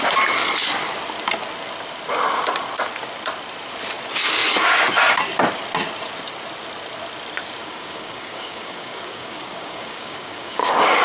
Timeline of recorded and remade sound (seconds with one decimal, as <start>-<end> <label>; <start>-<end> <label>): 0.0-7.6 recorded; 7.6-11.0 remade